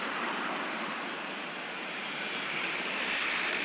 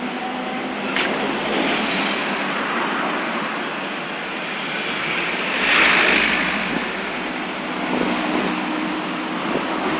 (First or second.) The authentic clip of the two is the second